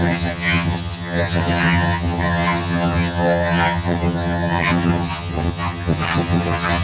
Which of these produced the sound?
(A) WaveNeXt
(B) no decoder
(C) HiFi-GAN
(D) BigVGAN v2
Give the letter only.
C